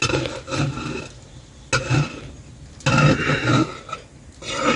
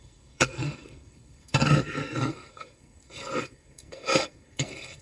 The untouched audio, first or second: first